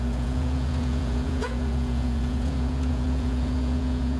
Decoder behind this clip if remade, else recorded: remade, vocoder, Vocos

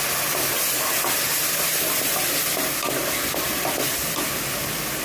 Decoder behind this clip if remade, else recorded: recorded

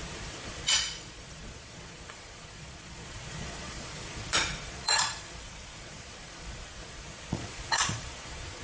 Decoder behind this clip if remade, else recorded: remade, vocoder, Vocos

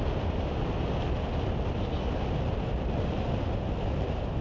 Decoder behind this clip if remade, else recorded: recorded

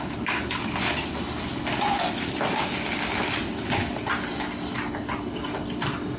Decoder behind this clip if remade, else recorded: recorded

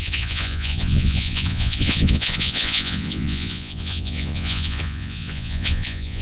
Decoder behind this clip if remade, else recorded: remade, vocoder, Vocos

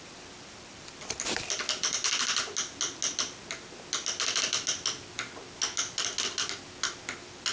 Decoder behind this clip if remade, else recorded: recorded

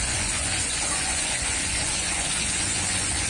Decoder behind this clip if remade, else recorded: remade, vocoder, Vocos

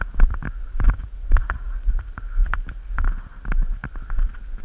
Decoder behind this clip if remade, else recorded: recorded